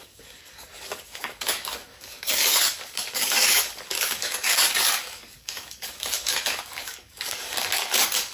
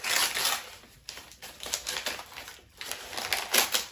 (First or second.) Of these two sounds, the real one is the second